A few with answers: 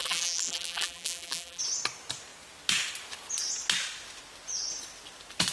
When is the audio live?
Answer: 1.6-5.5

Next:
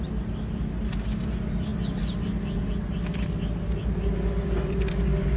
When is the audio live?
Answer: 0.0-5.4

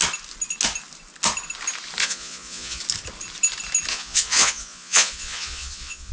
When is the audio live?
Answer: 0.0-2.0; 2.8-3.9

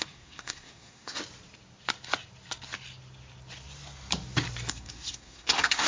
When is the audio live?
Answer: 1.2-4.7